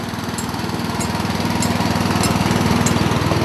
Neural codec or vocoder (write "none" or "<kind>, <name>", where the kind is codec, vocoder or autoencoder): none